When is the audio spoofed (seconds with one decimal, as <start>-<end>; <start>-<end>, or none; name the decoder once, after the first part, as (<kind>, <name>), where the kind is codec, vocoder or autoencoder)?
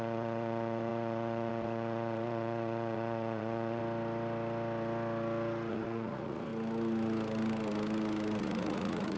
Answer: 0.0-3.8 (vocoder, Vocos); 5.7-6.5; 8.4-9.2